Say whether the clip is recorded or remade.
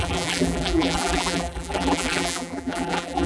remade